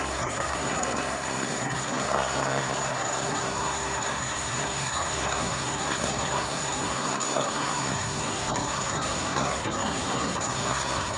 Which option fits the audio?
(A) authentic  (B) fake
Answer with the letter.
B